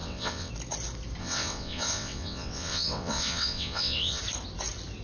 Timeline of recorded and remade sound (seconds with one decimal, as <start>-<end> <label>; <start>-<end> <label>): 0.0-0.5 remade; 0.5-1.2 recorded; 1.2-4.2 remade; 4.2-5.0 recorded